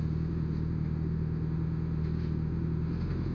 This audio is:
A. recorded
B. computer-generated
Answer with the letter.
B